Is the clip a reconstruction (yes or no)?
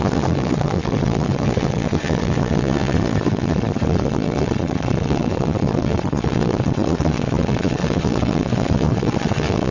yes